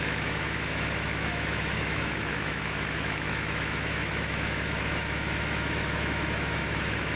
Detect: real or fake fake